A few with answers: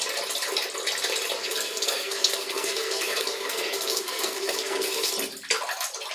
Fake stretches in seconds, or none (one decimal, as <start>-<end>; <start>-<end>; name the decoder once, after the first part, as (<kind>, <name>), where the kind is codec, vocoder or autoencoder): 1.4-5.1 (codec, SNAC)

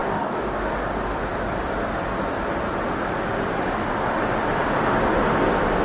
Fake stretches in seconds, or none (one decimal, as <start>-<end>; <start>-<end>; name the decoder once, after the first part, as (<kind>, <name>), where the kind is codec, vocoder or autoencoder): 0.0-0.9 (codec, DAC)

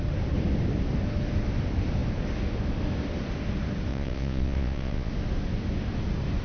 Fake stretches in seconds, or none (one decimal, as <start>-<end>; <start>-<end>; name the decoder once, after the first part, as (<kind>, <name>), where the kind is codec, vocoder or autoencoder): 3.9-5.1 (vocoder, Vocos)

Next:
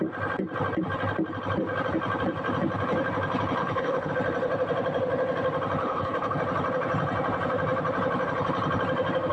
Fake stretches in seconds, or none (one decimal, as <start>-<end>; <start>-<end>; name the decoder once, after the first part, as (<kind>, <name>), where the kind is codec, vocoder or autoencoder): 3.6-4.1 (codec, HILCodec); 5.8-6.4

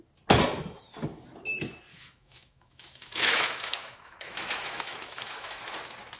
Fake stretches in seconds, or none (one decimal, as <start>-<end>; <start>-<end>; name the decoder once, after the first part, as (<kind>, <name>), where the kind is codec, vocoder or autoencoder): 1.9-5.6 (autoencoder, DAC-VAE)

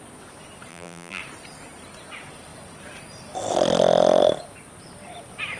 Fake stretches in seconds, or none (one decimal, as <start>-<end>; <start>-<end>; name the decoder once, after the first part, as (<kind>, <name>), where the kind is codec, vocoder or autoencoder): 0.7-1.2 (vocoder, BigVGAN v2)

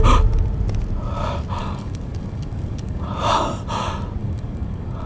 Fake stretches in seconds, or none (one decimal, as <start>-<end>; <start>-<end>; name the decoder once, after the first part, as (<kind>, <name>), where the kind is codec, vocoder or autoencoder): 1.6-3.1 (codec, DAC); 4.2-5.1